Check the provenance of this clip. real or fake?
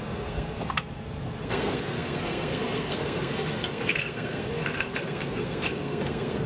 fake